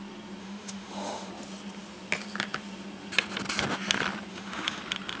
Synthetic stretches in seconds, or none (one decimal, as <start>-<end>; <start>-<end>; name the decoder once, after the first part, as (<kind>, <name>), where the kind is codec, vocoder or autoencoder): 0.4-1.3 (autoencoder, DAC-VAE); 4.3-4.8